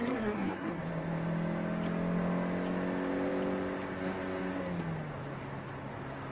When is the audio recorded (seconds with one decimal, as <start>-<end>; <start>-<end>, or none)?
0.8-6.3

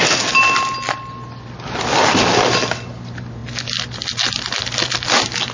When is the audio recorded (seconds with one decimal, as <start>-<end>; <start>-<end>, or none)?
0.0-5.5